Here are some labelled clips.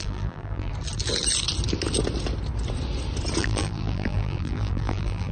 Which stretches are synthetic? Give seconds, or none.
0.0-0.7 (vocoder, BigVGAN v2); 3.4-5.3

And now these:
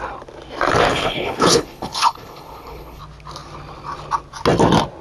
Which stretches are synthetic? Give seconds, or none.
0.9-3.0 (codec, HILCodec)